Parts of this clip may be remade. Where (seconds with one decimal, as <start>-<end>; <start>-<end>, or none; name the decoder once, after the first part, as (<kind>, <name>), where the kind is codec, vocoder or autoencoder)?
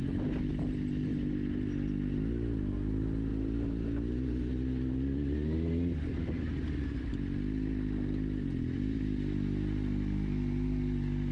none